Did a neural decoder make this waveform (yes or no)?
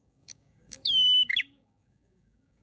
yes